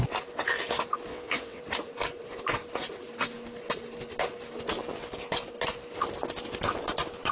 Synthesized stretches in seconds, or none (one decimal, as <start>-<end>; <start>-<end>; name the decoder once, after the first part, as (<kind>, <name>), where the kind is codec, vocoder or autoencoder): 1.1-1.6 (vocoder, WaveNeXt)